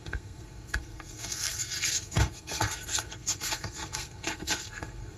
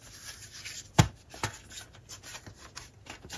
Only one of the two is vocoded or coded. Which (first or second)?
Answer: first